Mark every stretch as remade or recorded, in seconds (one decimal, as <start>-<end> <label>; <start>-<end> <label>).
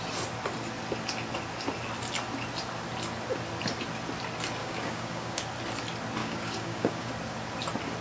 0.0-4.6 recorded; 4.6-5.4 remade; 5.4-6.2 recorded; 6.2-7.1 remade; 7.1-8.0 recorded